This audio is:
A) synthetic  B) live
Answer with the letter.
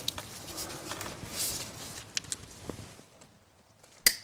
B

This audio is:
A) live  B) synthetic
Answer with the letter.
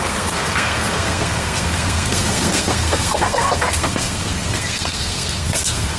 B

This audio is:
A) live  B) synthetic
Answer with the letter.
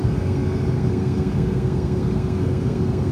B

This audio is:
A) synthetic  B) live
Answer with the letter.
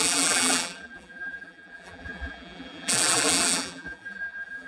A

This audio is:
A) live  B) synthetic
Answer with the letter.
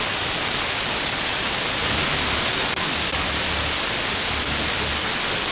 A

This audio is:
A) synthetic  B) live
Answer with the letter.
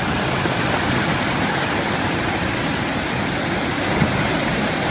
B